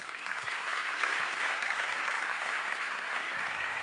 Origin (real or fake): fake